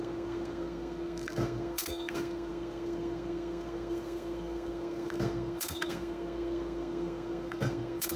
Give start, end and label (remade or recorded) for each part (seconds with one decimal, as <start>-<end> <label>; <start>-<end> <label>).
0.0-8.2 remade